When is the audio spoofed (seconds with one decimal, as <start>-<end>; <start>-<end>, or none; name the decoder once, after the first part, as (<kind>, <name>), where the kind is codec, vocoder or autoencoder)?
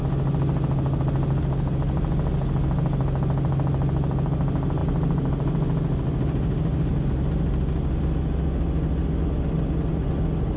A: none